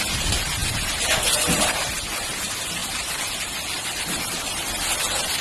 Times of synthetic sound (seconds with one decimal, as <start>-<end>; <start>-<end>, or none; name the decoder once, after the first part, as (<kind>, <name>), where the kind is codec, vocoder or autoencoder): 2.8-4.7 (vocoder, BigVGAN v2)